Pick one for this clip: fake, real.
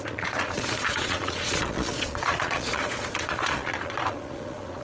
fake